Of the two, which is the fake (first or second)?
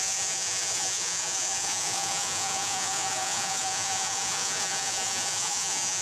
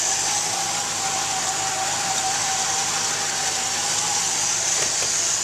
first